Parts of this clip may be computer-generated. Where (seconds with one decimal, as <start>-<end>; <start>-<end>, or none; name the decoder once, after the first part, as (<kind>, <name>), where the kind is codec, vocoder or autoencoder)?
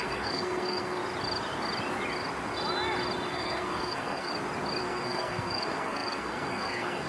0.0-1.0 (codec, SNAC); 3.3-4.3; 4.8-7.1